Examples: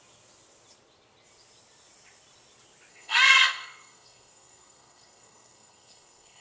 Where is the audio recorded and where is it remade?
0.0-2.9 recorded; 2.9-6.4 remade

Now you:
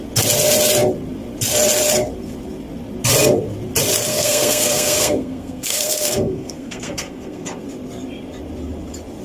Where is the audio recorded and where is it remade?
0.0-4.1 recorded; 4.1-7.6 remade; 7.6-9.2 recorded

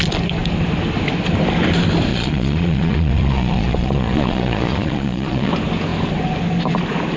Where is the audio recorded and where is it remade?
0.0-2.1 recorded; 2.1-5.5 remade; 5.5-7.2 recorded